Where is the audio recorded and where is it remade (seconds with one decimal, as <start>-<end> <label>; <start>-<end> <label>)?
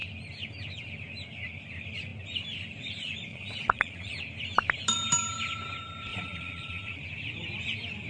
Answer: 0.0-3.3 recorded; 3.3-4.1 remade; 4.1-6.1 recorded; 6.1-7.0 remade; 7.0-8.1 recorded